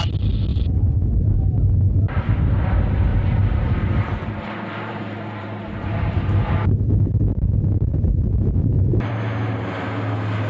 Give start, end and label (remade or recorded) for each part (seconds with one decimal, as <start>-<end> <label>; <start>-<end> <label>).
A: 0.0-0.5 recorded; 0.5-1.4 remade; 1.4-3.1 recorded; 3.1-6.9 remade; 6.9-7.9 recorded; 7.9-9.1 remade; 9.1-10.5 recorded